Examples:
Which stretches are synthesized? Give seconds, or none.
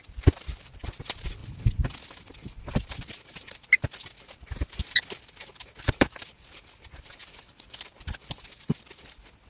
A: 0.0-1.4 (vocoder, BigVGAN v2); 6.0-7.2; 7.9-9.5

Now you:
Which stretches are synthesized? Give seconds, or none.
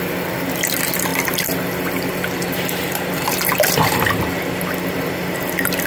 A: 1.1-4.2 (vocoder, BigVGAN v2)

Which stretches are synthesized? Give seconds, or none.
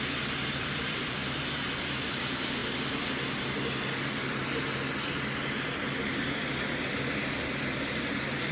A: 0.0-2.6 (vocoder, BigVGAN v2); 7.3-8.5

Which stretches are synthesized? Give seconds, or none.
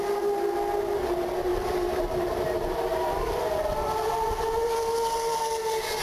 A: 1.5-4.7 (vocoder, BigVGAN v2)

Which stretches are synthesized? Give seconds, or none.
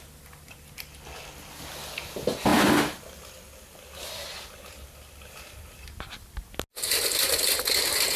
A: 6.7-8.2 (vocoder, BigVGAN v2)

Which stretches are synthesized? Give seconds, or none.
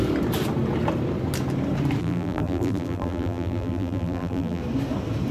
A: 2.0-4.6 (vocoder, BigVGAN v2)